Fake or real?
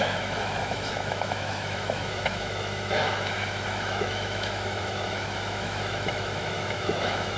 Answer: fake